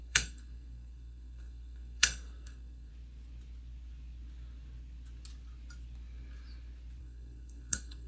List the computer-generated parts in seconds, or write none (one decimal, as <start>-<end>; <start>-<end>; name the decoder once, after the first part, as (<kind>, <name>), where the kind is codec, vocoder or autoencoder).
0.0-2.9 (codec, SNAC); 7.0-8.1